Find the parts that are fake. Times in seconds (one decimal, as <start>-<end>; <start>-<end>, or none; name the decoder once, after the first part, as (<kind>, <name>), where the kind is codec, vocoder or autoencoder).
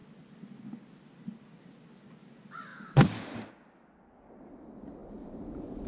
none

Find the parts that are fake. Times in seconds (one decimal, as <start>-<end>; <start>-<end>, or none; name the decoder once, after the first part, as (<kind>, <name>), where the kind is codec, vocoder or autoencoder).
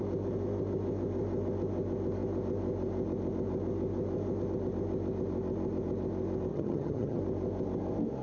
6.5-7.2 (vocoder, HiFi-GAN)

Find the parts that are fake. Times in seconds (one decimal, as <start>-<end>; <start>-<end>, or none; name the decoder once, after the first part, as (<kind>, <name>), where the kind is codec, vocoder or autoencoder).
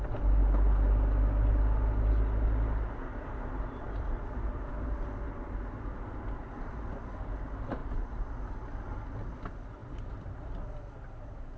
3.1-5.1 (vocoder, BigVGAN v2); 7.8-8.3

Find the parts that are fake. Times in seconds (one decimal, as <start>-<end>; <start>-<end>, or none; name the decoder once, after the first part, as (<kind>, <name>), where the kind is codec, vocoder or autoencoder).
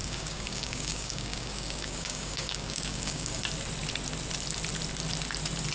0.0-3.4 (codec, DAC)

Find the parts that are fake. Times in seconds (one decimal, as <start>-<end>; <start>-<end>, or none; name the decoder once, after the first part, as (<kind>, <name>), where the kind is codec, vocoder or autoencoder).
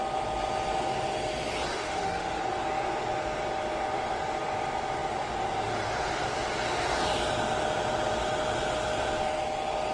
1.7-2.4 (autoencoder, DAC-VAE)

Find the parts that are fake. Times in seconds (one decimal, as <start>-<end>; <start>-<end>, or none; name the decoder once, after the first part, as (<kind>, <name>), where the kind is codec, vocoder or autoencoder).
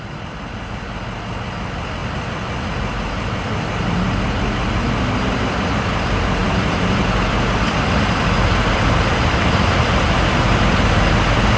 6.4-9.7 (vocoder, BigVGAN v2)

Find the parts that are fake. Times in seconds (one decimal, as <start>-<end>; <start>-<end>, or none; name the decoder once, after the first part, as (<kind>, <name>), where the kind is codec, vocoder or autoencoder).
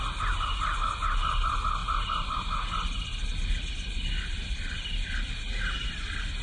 none